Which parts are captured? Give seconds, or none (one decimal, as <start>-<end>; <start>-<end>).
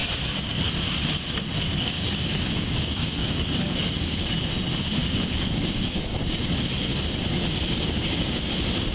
0.0-1.7; 4.4-5.0; 6.2-8.9